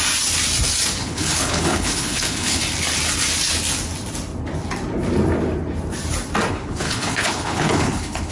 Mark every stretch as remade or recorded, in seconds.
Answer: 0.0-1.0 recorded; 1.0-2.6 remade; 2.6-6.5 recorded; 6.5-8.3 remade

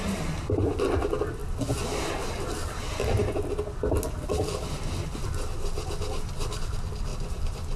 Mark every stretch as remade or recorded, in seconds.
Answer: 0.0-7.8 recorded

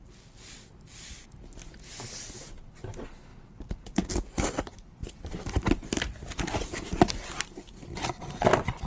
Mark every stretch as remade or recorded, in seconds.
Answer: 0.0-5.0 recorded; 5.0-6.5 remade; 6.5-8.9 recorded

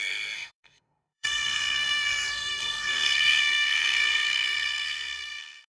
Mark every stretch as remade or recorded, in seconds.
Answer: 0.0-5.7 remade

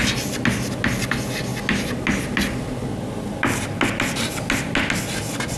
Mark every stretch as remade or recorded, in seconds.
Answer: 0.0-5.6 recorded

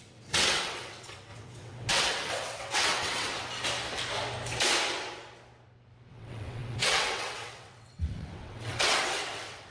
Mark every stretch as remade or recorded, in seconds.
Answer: 0.0-3.3 remade; 3.3-6.1 recorded; 6.1-9.7 remade